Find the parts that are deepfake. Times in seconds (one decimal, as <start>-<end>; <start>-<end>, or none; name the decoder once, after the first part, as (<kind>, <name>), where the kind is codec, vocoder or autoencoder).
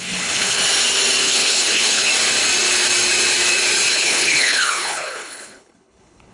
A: 0.0-0.6 (codec, HILCodec); 1.2-2.1; 3.9-6.3